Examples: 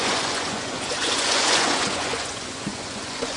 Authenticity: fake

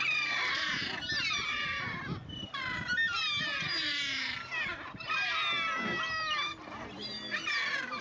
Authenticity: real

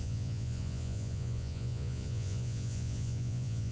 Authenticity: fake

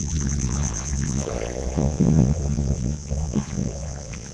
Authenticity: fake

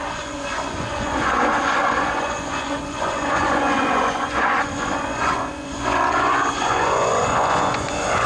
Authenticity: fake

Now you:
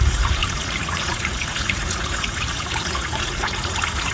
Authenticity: fake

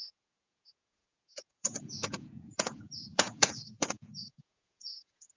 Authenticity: fake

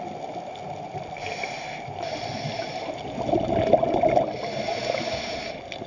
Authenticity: real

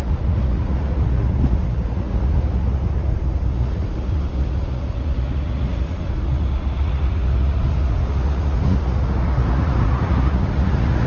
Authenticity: fake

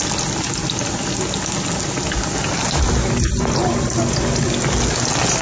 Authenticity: real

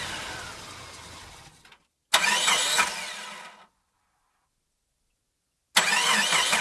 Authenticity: real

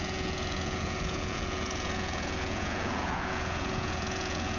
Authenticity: fake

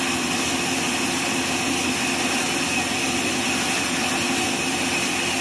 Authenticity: real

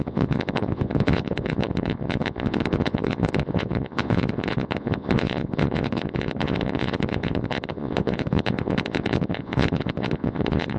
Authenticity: fake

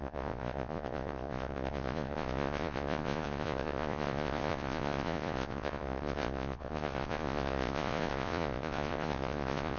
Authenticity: fake